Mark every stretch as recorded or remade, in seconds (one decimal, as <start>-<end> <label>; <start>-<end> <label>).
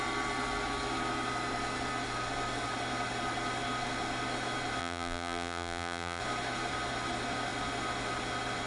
0.0-4.8 recorded; 4.8-6.2 remade; 6.2-8.7 recorded